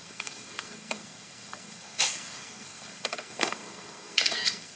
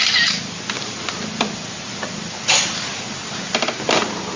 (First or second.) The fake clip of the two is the first